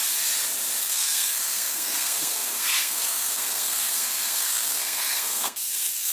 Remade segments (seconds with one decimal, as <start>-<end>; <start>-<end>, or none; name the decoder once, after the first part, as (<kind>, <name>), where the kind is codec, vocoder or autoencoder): 0.8-6.1 (codec, SNAC)